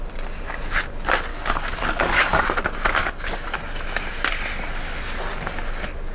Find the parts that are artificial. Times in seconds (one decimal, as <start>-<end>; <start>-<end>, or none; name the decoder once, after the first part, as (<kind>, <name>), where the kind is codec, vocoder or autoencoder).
1.3-2.4 (codec, DAC); 3.0-3.6